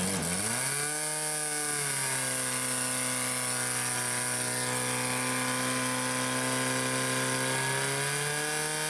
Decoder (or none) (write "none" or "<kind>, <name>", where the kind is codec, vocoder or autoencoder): none